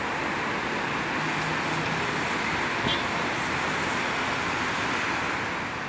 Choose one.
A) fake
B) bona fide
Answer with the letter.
B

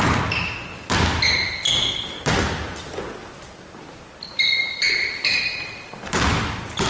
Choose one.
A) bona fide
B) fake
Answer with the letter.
A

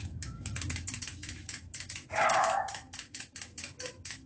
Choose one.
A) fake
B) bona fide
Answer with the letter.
A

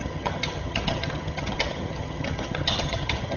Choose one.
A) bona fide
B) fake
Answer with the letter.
B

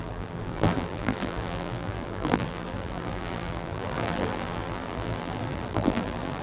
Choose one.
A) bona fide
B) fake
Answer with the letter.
B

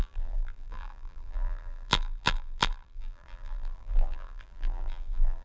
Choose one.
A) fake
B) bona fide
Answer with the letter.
A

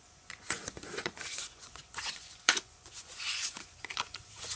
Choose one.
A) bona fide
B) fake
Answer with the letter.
B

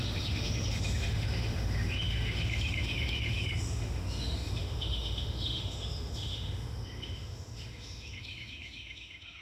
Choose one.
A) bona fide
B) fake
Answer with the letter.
B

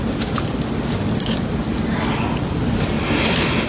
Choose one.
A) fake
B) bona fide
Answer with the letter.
B